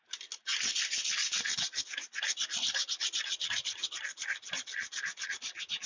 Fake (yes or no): no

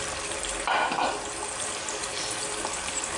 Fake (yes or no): no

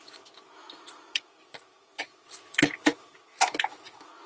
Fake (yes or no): yes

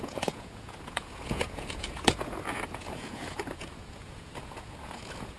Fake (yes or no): yes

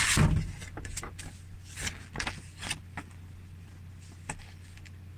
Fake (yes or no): no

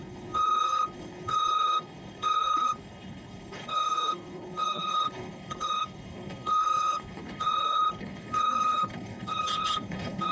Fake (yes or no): yes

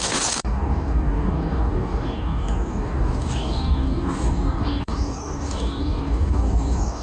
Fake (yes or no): yes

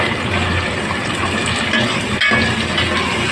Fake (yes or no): no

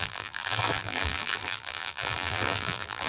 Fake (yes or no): yes